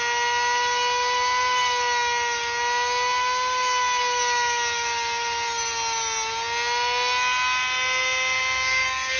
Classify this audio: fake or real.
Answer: real